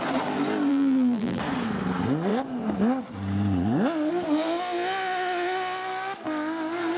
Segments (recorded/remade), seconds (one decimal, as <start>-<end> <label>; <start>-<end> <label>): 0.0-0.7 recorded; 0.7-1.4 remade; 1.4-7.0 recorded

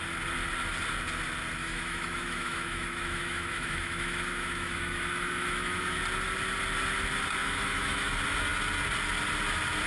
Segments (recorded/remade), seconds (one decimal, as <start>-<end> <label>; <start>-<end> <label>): 0.0-1.6 recorded; 1.6-6.0 remade; 6.0-7.4 recorded; 7.4-8.1 remade; 8.1-9.9 recorded

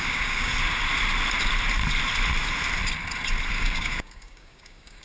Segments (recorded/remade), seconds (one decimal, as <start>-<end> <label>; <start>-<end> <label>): 0.0-0.5 remade; 0.5-3.5 recorded; 3.5-5.0 remade